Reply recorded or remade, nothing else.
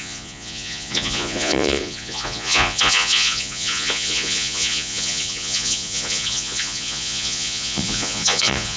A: remade